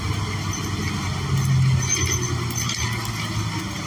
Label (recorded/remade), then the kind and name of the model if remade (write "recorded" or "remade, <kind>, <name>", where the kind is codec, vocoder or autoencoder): recorded